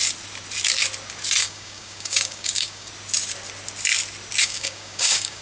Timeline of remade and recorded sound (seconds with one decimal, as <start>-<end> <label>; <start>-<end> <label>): 0.0-1.4 recorded; 1.4-2.9 remade; 2.9-4.4 recorded; 4.4-5.4 remade